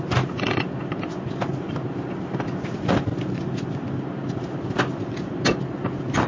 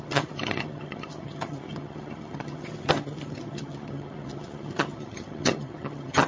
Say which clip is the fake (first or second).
second